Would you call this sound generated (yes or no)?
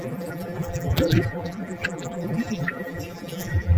yes